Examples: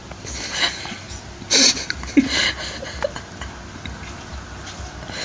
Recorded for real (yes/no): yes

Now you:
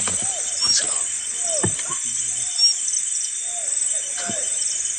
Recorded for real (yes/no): yes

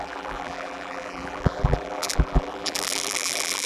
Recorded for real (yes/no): no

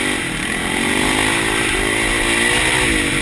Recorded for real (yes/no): yes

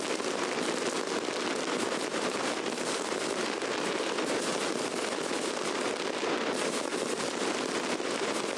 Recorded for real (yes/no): yes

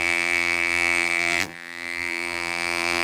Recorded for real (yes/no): no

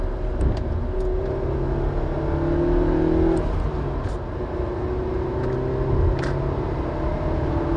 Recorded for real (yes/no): yes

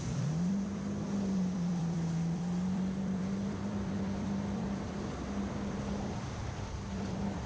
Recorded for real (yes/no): no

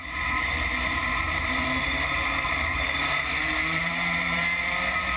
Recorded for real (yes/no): no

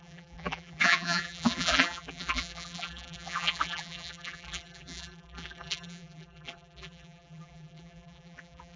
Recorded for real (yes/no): no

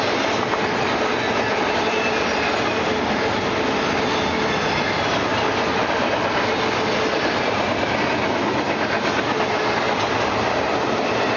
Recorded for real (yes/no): yes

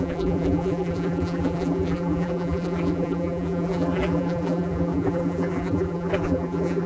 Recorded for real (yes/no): no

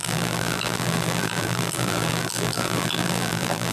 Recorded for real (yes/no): no